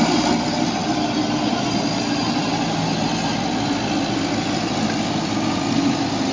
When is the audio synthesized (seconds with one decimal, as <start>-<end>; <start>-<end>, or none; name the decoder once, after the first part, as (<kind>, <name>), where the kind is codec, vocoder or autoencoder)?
none